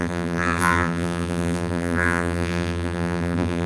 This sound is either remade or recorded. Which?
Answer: remade